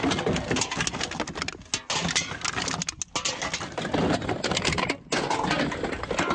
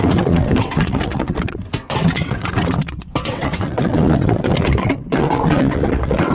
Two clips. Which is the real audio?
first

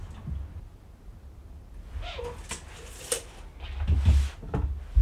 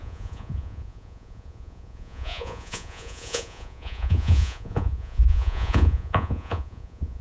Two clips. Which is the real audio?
first